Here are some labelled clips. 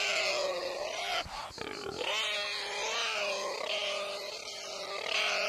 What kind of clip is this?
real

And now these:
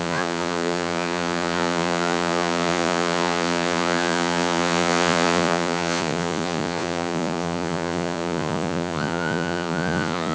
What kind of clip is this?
fake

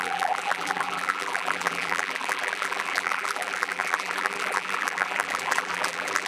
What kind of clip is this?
fake